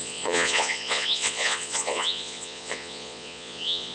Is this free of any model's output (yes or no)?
no